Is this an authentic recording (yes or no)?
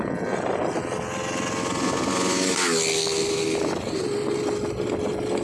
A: yes